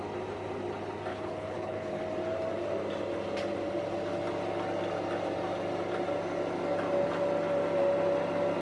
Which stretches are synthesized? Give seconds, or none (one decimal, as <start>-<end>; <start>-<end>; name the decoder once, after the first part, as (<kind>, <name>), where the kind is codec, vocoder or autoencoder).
1.1-2.0 (codec, HILCodec)